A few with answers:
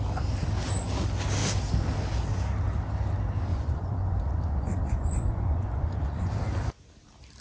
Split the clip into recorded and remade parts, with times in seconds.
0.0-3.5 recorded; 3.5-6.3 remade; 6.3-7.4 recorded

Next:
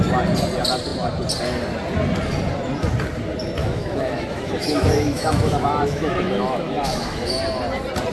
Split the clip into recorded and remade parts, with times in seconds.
0.0-3.6 recorded; 3.6-7.4 remade; 7.4-8.1 recorded

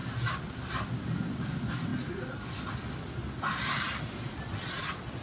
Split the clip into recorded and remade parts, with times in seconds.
0.0-5.2 remade

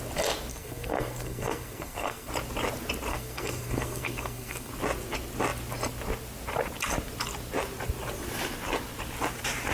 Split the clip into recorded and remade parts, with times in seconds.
0.0-0.5 recorded; 0.5-2.3 remade; 2.3-3.1 recorded; 3.1-4.7 remade; 4.7-9.7 recorded

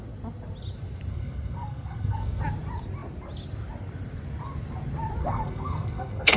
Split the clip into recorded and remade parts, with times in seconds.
0.0-1.1 recorded; 1.1-2.4 remade; 2.4-5.2 recorded; 5.2-6.4 remade

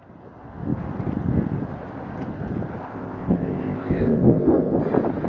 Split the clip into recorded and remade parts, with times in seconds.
0.0-2.8 recorded; 2.8-4.8 remade; 4.8-5.3 recorded

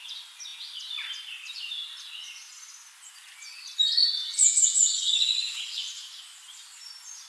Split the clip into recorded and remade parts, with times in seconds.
0.0-4.0 recorded; 4.0-6.2 remade; 6.2-7.3 recorded